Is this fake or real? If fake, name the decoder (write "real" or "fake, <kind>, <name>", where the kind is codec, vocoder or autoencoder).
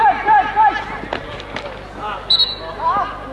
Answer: real